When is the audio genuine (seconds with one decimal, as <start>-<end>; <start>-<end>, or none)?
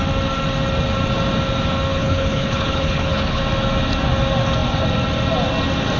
0.0-1.9; 3.4-6.0